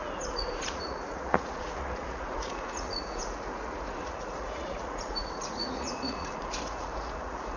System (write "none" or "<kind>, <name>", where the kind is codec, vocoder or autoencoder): vocoder, Vocos